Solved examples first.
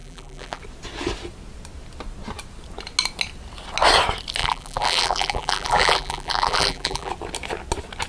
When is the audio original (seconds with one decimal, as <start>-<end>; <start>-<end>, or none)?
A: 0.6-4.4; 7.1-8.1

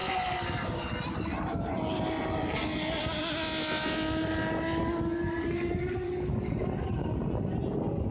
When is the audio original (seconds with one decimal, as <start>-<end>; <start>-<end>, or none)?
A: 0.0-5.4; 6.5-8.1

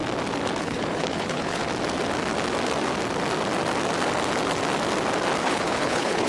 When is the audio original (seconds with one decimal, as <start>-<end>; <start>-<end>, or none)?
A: 0.0-0.6; 1.6-5.4

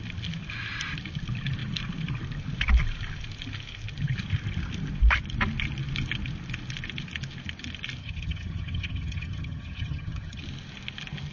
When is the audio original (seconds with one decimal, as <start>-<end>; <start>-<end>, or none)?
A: 0.0-8.0; 10.4-11.3

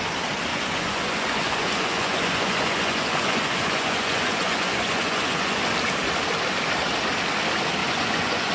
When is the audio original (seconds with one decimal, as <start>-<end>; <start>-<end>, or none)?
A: 0.0-0.5; 5.6-7.8

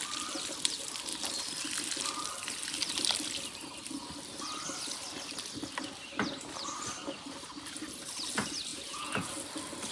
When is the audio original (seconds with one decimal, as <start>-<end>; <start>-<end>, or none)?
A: 0.0-8.7; 9.3-9.9